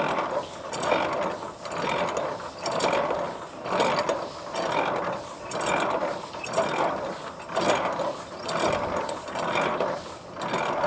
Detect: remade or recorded recorded